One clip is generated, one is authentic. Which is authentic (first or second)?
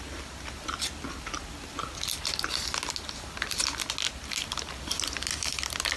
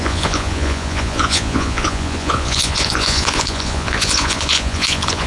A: first